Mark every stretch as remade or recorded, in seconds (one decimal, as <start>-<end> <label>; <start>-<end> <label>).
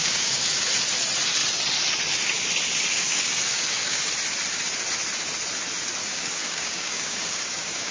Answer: 0.0-0.7 remade; 0.7-2.9 recorded; 2.9-4.1 remade; 4.1-6.0 recorded; 6.0-7.9 remade